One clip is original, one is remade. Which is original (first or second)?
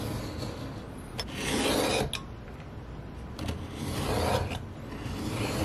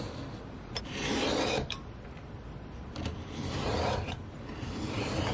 first